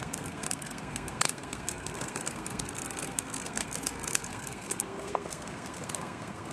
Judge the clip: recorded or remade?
remade